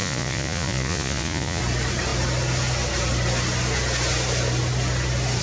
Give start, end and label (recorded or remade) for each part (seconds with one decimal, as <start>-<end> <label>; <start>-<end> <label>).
0.0-1.6 remade; 1.6-5.4 recorded